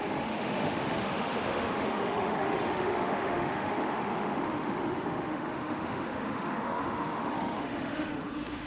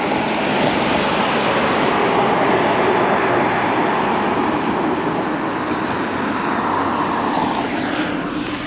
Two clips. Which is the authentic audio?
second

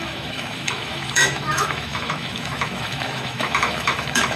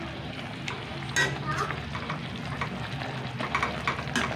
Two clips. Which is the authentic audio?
second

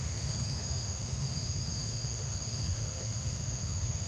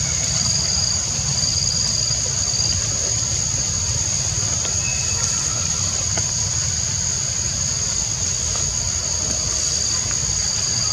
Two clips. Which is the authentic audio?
second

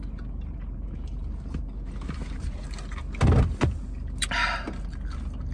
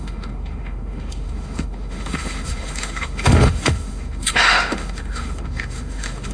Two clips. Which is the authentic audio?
first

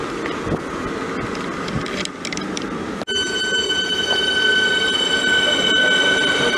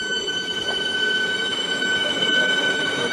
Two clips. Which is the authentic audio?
first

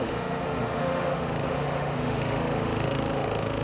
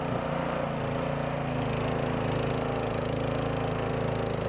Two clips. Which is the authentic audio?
second